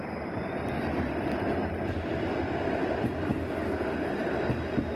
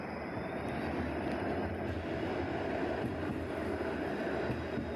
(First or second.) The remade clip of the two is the first